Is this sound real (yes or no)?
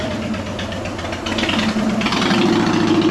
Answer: yes